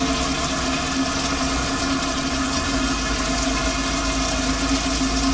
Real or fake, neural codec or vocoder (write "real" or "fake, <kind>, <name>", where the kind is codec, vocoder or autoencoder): real